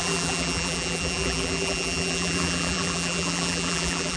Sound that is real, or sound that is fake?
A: fake